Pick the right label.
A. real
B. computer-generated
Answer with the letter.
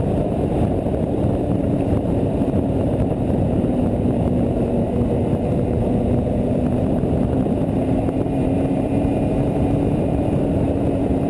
B